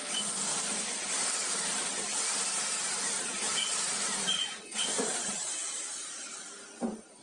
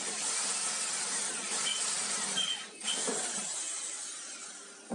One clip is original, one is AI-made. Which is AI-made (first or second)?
first